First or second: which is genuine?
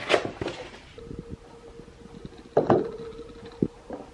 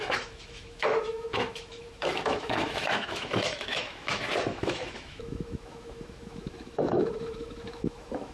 first